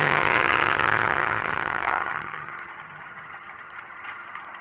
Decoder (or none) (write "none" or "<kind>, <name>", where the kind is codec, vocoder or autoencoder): vocoder, HiFi-GAN